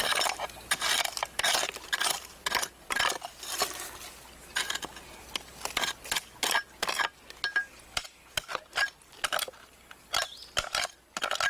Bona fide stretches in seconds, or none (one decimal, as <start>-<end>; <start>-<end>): 0.0-11.5